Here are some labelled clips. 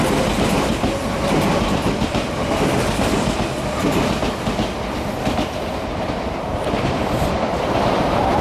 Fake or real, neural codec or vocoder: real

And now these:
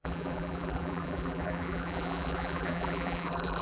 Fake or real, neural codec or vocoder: fake, vocoder, BigVGAN v2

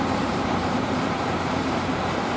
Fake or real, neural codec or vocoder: fake, vocoder, BigVGAN v2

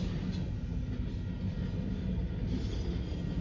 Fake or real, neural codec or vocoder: real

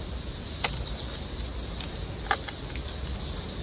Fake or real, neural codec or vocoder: real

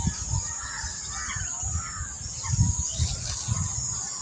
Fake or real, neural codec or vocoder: real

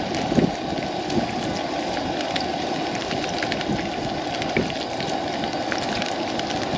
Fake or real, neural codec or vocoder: real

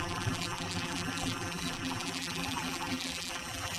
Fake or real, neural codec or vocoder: fake, vocoder, BigVGAN v2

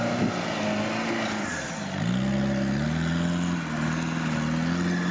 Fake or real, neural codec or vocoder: real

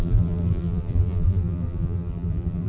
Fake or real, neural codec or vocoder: fake, vocoder, BigVGAN v2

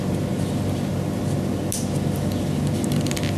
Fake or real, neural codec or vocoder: real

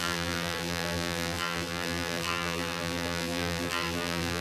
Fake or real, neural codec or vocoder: fake, vocoder, BigVGAN v2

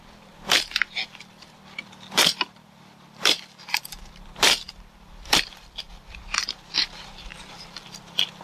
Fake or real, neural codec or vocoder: fake, vocoder, BigVGAN v2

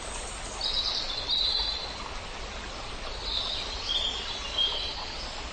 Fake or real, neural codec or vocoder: real